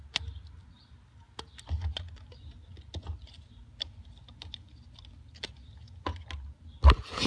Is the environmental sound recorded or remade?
recorded